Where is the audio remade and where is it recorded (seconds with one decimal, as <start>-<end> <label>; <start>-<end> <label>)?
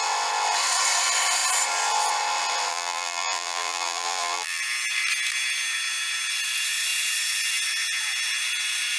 0.0-2.7 recorded; 2.7-4.6 remade; 4.6-9.0 recorded